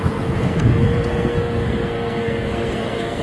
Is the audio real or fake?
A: fake